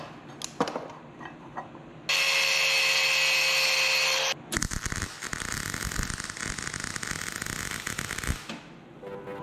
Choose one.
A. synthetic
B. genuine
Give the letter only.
B